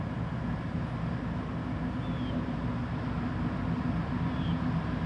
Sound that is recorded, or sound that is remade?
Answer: recorded